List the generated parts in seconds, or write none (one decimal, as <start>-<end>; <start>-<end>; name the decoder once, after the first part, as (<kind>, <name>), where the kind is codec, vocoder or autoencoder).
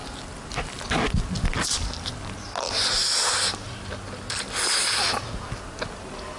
none